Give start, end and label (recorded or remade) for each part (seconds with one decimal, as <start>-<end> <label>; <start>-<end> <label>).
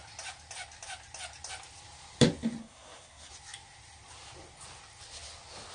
0.0-2.6 recorded; 2.6-3.3 remade; 3.3-5.7 recorded